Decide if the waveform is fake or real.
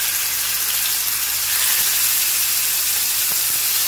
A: real